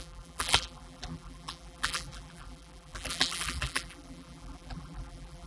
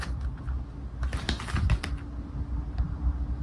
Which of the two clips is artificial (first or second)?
first